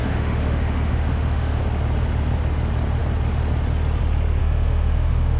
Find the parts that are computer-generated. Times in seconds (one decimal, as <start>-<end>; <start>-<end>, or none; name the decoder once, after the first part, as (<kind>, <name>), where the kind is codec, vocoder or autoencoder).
0.0-1.6 (autoencoder, DAC-VAE); 4.4-5.4